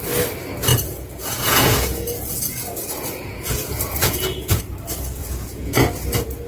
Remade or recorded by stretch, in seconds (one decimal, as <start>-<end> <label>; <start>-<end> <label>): 0.0-0.7 recorded; 0.7-4.6 remade; 4.6-5.2 recorded; 5.2-5.9 remade; 5.9-6.5 recorded